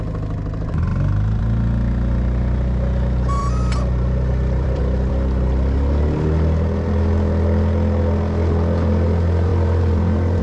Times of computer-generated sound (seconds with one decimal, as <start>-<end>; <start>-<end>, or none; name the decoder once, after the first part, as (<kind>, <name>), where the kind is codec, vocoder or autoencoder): 0.9-1.4 (vocoder, BigVGAN v2); 3.4-5.1; 9.5-10.4